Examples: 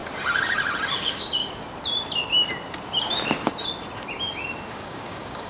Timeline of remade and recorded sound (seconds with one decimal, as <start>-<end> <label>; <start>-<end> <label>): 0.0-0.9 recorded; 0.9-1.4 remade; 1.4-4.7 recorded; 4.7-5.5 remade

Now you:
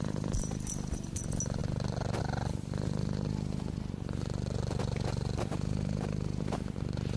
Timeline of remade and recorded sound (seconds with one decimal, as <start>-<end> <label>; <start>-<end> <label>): 0.0-7.2 recorded

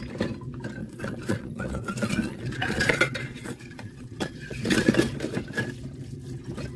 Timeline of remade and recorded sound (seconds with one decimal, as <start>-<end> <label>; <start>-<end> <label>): 0.0-0.8 recorded; 0.8-4.9 remade; 4.9-6.8 recorded